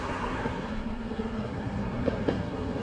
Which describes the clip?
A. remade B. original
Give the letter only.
A